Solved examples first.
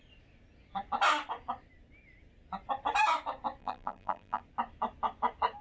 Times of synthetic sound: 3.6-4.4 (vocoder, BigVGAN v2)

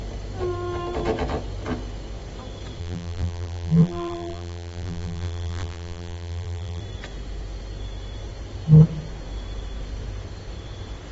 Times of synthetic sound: 2.8-6.8 (vocoder, BigVGAN v2)

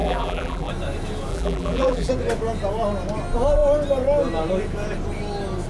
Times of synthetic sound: 0.0-0.7 (vocoder, BigVGAN v2); 1.3-2.1

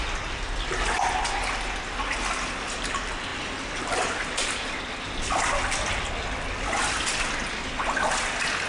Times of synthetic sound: 3.3-4.5 (vocoder, BigVGAN v2)